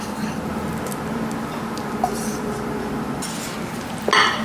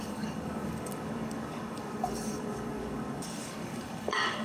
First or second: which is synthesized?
second